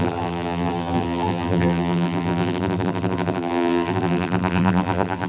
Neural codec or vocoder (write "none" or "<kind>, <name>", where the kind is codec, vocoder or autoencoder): vocoder, BigVGAN v2